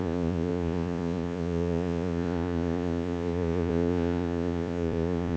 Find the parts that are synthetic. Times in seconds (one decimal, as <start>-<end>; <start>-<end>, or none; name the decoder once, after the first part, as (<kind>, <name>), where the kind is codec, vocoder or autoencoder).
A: 0.0-5.4 (vocoder, Vocos)